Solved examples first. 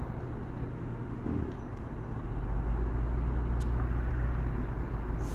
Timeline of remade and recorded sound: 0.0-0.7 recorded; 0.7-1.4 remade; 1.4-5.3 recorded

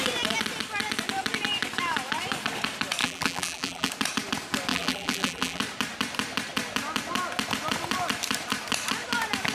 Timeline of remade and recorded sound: 0.0-3.0 recorded; 3.0-3.9 remade; 3.9-4.7 recorded; 4.7-5.6 remade; 5.6-9.5 recorded

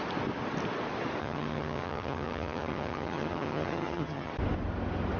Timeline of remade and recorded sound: 0.0-1.2 recorded; 1.2-4.3 remade; 4.3-5.2 recorded

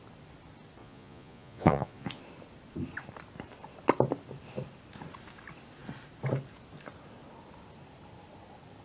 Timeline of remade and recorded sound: 0.0-0.8 recorded; 0.8-2.2 remade; 2.2-8.8 recorded